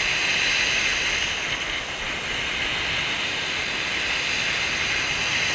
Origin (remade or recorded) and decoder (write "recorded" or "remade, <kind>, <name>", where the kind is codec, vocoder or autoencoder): recorded